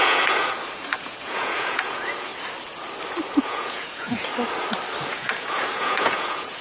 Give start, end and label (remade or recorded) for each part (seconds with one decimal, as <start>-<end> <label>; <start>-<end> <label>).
0.0-2.3 remade; 2.3-3.4 recorded; 3.4-4.3 remade; 4.3-5.1 recorded; 5.1-6.6 remade